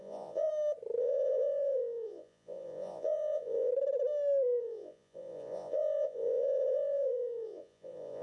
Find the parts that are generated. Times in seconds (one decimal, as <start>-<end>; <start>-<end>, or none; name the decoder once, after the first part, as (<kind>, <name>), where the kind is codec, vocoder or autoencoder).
0.0-0.5 (vocoder, Vocos); 1.0-3.7; 4.6-8.2